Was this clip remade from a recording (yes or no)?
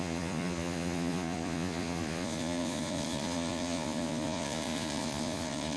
yes